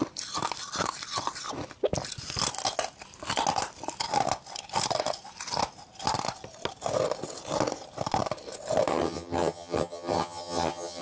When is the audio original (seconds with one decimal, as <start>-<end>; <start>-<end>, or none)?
0.0-8.9